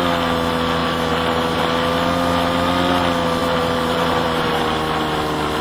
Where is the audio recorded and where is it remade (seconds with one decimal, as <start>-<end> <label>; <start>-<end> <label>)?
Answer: 0.0-0.8 recorded; 0.8-1.6 remade; 1.6-3.4 recorded; 3.4-4.6 remade; 4.6-5.6 recorded